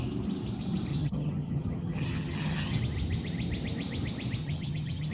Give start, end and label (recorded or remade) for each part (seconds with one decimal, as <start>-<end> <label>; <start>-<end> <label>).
0.0-0.9 recorded; 0.9-2.8 remade; 2.8-4.4 recorded; 4.4-5.1 remade